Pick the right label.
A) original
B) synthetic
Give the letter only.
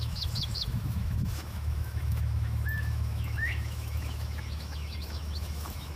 B